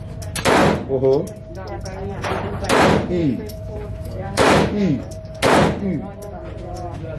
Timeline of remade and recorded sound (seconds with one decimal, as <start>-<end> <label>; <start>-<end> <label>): 0.0-3.2 recorded; 3.2-5.0 remade; 5.0-7.2 recorded

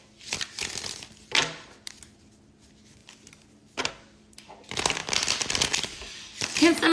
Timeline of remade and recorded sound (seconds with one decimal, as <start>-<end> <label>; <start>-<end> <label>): 0.0-3.0 recorded; 3.0-3.9 remade; 3.9-6.9 recorded

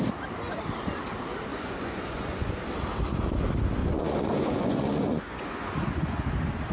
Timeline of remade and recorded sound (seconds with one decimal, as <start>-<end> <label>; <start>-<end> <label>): 0.0-1.5 recorded; 1.5-2.5 remade; 2.5-3.8 recorded; 3.8-6.2 remade; 6.2-6.7 recorded

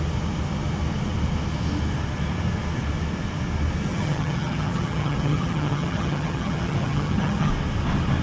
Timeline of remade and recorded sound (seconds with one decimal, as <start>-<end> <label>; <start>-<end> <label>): 0.0-3.9 recorded; 3.9-7.5 remade; 7.5-8.2 recorded